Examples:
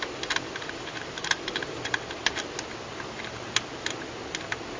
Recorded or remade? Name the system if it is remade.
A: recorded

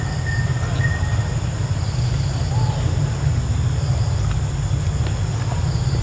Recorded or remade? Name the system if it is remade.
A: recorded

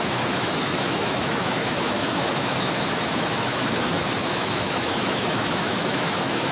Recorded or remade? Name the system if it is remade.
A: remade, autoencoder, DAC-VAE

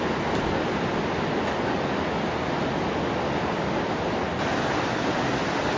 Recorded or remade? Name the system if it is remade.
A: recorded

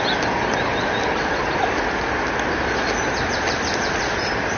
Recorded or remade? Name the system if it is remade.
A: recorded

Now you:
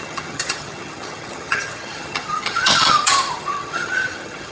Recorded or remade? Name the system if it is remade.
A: remade, vocoder, HiFi-GAN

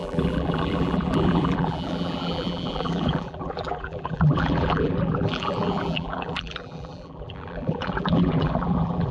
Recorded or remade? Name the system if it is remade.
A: remade, vocoder, BigVGAN v2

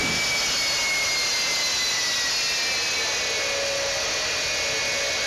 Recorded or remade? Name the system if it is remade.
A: recorded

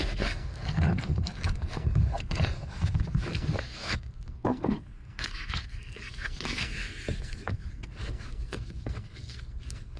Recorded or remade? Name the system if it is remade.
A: remade, codec, SNAC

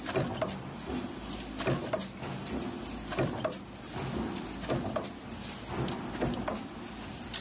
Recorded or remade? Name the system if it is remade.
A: recorded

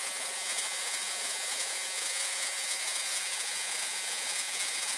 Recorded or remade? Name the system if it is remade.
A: remade, vocoder, Vocos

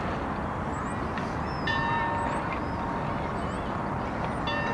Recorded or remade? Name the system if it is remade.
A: recorded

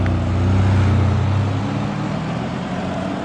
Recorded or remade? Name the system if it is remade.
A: recorded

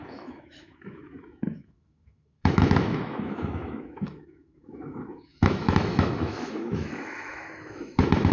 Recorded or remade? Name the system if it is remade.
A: remade, autoencoder, DAC-VAE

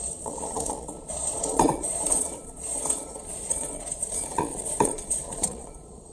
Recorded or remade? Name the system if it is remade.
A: remade, vocoder, Vocos